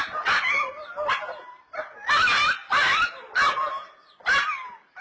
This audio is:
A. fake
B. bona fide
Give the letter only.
B